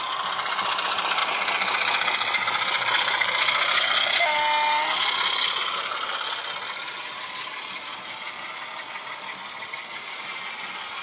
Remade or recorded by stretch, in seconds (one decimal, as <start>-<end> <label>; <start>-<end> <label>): 0.0-11.0 recorded

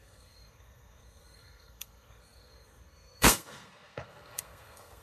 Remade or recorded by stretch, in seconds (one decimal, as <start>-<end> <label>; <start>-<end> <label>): 0.0-5.0 remade

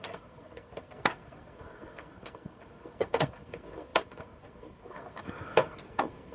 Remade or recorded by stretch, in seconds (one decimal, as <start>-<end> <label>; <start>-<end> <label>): 0.0-6.3 remade

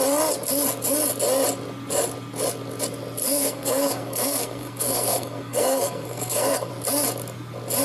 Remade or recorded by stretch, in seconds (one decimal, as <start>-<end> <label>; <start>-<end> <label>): 0.0-3.2 recorded; 3.2-6.7 remade; 6.7-7.8 recorded

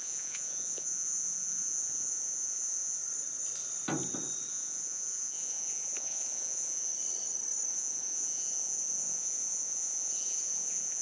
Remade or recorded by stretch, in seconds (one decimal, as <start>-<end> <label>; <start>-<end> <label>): 0.0-3.0 remade; 3.0-4.5 recorded; 4.5-6.9 remade; 6.9-7.7 recorded; 7.7-11.0 remade

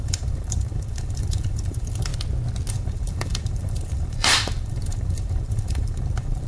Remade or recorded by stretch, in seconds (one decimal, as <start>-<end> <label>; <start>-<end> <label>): 0.0-2.1 remade; 2.1-2.7 recorded; 2.7-6.5 remade

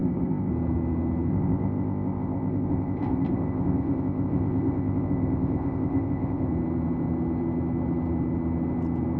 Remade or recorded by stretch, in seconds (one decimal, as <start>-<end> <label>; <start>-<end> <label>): 0.0-0.5 remade; 0.5-1.3 recorded; 1.3-6.5 remade; 6.5-9.2 recorded